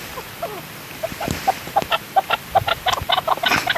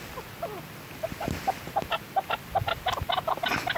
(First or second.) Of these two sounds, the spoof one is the first